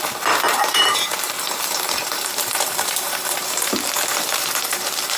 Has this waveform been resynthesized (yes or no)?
yes